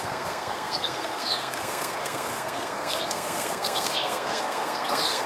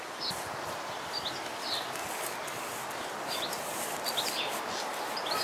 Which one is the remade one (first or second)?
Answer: first